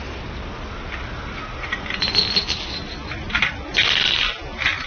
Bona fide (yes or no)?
yes